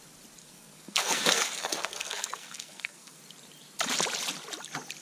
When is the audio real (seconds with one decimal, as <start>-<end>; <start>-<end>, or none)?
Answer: 0.0-0.4; 3.2-5.0